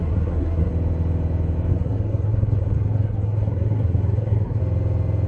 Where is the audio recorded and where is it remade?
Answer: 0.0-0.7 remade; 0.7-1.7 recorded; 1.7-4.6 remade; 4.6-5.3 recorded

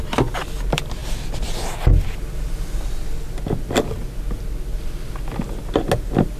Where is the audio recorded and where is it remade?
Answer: 0.0-6.4 recorded

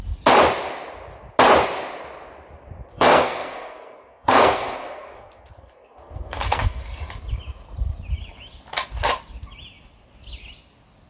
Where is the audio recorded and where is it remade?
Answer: 0.0-2.9 recorded; 2.9-7.0 remade; 7.0-11.1 recorded

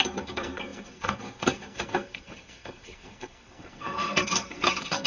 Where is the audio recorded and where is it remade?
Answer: 0.0-5.1 remade

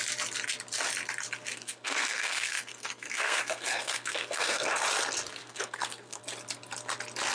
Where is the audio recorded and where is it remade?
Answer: 0.0-1.5 recorded; 1.5-4.8 remade; 4.8-5.4 recorded; 5.4-6.2 remade; 6.2-7.3 recorded